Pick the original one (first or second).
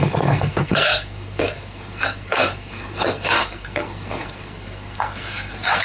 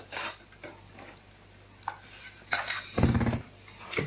second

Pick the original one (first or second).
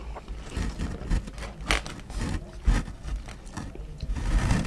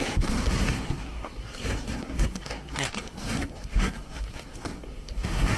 first